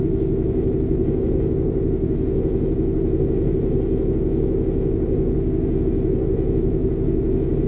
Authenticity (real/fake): real